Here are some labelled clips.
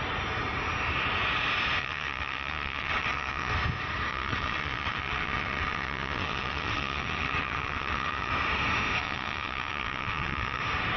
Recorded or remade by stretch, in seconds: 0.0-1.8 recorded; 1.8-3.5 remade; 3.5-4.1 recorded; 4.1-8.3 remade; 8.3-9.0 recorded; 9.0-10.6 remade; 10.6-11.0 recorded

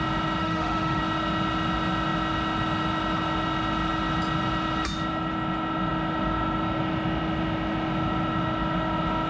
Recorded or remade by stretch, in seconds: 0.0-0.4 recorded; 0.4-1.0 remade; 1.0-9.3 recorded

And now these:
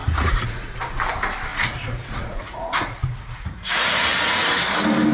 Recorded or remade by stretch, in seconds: 0.0-0.7 remade; 0.7-1.5 recorded; 1.5-4.6 remade; 4.6-5.1 recorded

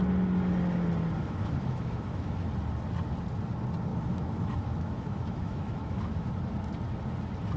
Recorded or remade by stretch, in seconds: 0.0-1.2 recorded; 1.2-2.5 remade; 2.5-3.9 recorded; 3.9-6.3 remade; 6.3-7.6 recorded